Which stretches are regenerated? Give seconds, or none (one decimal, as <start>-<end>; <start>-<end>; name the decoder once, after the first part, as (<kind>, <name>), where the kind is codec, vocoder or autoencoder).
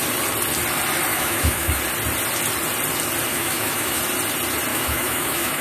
1.1-1.8 (autoencoder, DAC-VAE); 3.3-4.0; 4.7-5.6